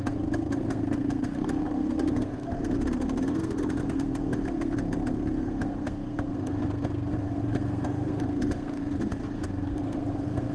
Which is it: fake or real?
fake